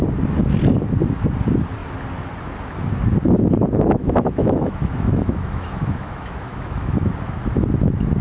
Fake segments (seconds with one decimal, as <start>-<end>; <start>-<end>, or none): 4.0-7.1